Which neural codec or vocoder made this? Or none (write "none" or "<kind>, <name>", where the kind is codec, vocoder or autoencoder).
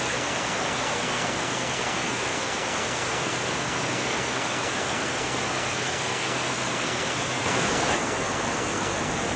codec, SNAC